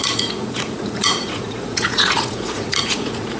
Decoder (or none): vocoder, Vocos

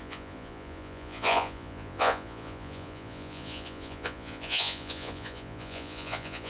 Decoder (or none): vocoder, Vocos